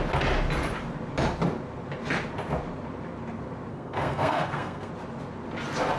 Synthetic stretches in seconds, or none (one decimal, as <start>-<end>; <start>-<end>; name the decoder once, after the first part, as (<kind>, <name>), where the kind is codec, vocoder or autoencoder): 3.7-4.9 (codec, SNAC)